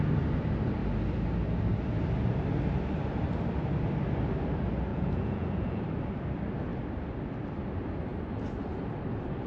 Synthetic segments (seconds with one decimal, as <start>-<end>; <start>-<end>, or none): 4.9-5.8

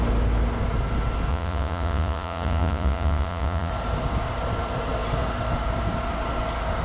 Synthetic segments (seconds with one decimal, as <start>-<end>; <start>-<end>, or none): 1.3-3.7

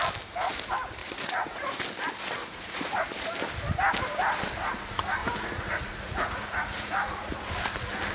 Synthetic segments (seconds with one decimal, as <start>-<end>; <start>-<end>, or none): 1.0-1.8; 2.4-3.3; 5.2-7.4

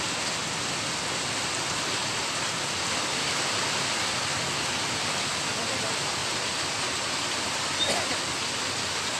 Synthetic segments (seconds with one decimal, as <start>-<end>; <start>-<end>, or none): none

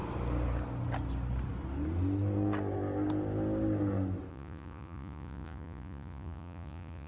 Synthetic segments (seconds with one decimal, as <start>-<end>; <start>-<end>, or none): 4.3-7.1